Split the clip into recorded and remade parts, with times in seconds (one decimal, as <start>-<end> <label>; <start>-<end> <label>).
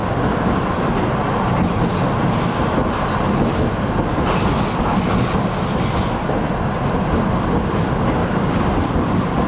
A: 0.0-8.2 recorded; 8.2-8.7 remade; 8.7-9.5 recorded